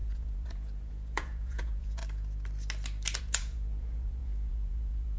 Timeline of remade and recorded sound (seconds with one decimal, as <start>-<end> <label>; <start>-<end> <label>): 0.0-2.0 remade; 2.0-3.2 recorded; 3.2-5.2 remade